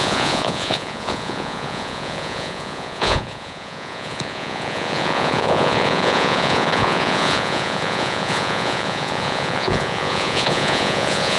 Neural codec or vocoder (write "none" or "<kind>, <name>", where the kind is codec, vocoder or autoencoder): vocoder, Vocos